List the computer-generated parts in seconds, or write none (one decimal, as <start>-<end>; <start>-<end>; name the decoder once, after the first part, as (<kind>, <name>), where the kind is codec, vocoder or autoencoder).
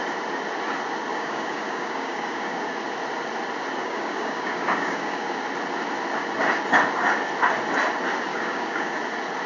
1.1-2.6 (codec, DAC); 3.8-5.4; 8.3-9.0